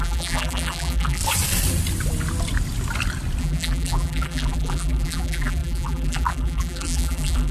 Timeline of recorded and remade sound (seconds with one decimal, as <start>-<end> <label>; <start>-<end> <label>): 0.0-1.2 remade; 1.2-3.4 recorded; 3.4-7.5 remade